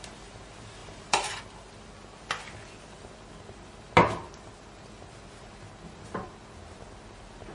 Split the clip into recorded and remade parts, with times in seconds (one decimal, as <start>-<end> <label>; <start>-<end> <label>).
0.0-0.8 recorded; 0.8-1.4 remade; 1.4-7.5 recorded

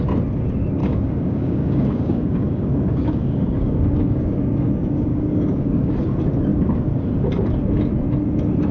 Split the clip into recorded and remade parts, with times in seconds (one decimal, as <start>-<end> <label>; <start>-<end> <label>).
0.0-0.8 recorded; 0.8-5.9 remade; 5.9-8.7 recorded

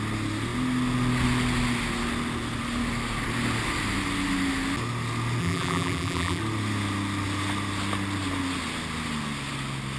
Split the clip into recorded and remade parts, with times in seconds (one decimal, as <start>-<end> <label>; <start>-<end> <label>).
0.0-5.4 recorded; 5.4-6.4 remade; 6.4-10.0 recorded

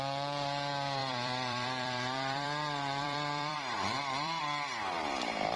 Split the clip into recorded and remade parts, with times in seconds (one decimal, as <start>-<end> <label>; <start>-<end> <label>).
0.0-1.0 recorded; 1.0-4.4 remade; 4.4-5.6 recorded